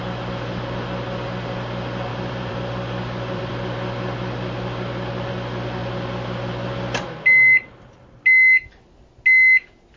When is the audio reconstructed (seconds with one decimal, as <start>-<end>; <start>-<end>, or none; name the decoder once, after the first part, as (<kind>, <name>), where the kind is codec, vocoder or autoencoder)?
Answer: 2.1-3.5 (vocoder, BigVGAN v2)